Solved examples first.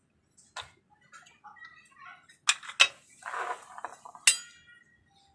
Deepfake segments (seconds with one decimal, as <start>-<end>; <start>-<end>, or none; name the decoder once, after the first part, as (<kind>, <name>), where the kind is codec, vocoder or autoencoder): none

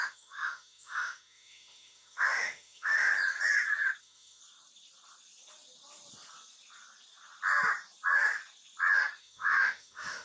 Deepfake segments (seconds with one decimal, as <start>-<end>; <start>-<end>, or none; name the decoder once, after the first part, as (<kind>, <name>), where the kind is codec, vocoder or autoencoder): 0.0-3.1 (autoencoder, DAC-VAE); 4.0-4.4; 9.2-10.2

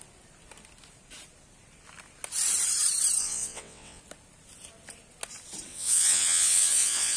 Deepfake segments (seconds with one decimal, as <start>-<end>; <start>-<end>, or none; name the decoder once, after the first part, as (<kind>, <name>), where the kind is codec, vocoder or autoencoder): 3.2-4.0 (vocoder, WaveNeXt); 5.7-7.2